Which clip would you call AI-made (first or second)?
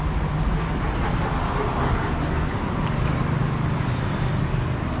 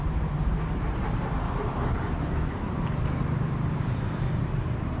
second